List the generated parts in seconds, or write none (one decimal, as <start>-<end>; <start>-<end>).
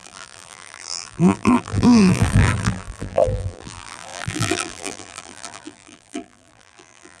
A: 0.0-7.2